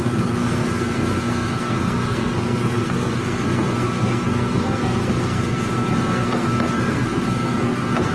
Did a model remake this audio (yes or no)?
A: yes